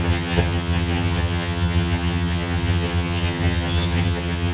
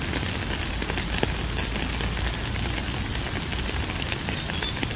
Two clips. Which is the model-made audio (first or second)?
first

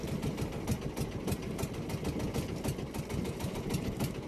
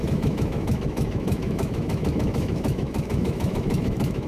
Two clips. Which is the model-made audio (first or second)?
second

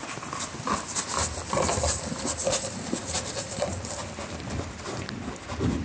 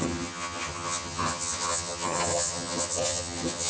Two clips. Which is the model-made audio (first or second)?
second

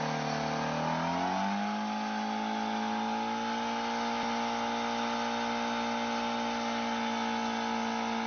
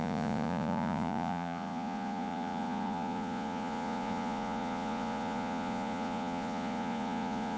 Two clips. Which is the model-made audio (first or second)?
second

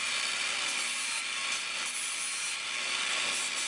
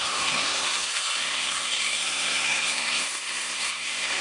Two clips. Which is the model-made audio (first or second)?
second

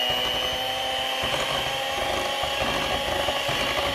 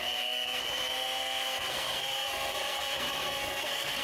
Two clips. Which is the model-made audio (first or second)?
second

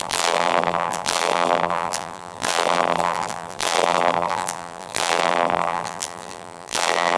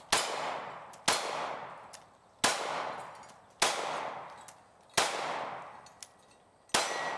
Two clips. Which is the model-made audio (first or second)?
first